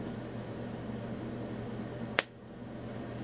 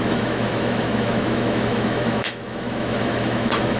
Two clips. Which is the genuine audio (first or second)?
first